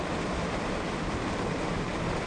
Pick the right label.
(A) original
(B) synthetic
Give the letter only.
A